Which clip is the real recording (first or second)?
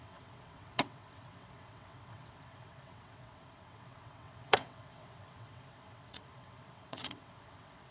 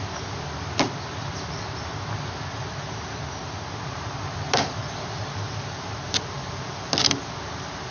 second